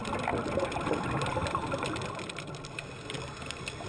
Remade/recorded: recorded